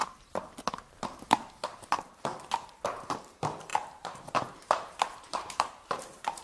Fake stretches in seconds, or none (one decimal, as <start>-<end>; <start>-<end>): 3.1-6.4